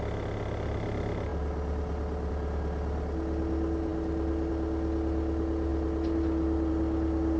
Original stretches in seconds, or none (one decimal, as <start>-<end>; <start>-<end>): 0.0-7.4